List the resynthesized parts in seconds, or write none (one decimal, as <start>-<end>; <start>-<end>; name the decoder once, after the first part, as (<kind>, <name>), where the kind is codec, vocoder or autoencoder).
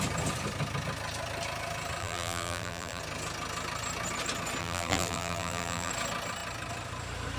2.0-3.0 (vocoder, BigVGAN v2); 4.6-5.9